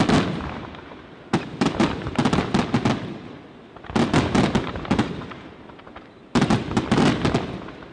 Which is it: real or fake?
fake